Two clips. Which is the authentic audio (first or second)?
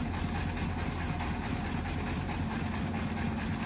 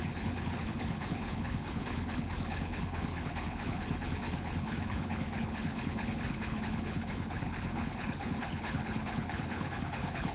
first